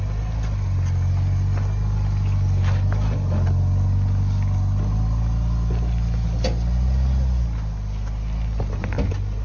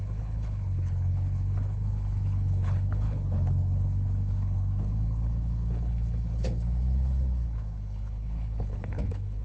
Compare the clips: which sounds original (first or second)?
first